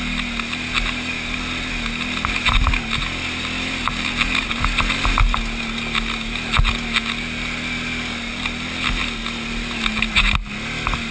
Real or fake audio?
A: real